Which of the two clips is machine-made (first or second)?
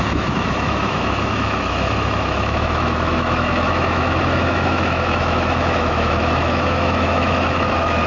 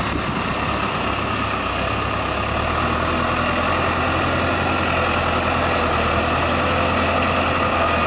first